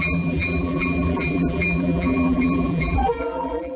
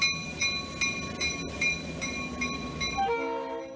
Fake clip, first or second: first